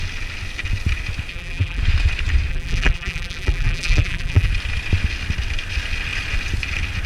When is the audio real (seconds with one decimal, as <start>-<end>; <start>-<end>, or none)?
0.0-1.3; 1.8-2.5; 4.5-7.1